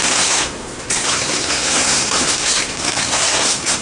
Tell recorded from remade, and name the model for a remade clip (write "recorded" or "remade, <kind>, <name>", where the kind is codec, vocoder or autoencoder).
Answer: remade, codec, SNAC